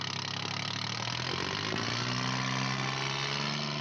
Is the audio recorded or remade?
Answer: recorded